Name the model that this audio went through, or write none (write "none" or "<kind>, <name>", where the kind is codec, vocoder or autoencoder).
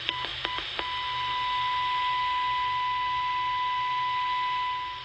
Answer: none